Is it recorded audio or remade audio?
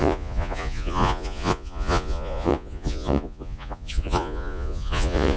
remade